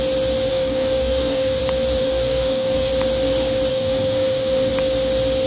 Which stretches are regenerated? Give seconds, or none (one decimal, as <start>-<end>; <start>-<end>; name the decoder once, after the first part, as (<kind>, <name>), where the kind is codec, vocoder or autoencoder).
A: 0.5-1.6 (codec, DAC); 2.0-2.9; 3.7-4.7

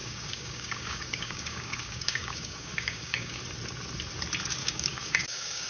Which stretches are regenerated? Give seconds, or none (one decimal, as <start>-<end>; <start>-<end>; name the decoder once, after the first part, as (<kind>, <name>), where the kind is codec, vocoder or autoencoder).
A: 0.0-3.4 (codec, DAC); 4.6-5.7

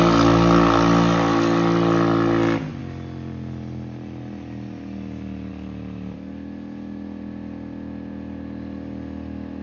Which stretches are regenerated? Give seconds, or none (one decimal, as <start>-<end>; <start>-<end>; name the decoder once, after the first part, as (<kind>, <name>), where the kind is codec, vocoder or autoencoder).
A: none

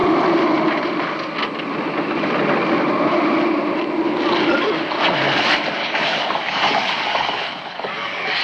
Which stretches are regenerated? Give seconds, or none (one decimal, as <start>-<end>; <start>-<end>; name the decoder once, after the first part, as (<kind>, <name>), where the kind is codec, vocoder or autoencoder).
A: 5.8-8.4 (codec, DAC)

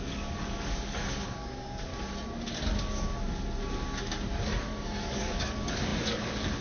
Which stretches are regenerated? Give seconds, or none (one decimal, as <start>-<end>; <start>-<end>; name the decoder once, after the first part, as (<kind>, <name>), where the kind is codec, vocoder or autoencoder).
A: 0.0-1.9 (codec, DAC); 4.0-6.6